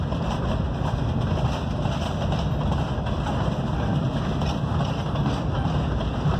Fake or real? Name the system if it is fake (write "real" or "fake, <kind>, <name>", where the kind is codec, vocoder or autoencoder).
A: real